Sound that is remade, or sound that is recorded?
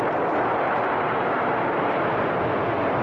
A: recorded